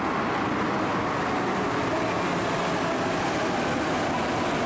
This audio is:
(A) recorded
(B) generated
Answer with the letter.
A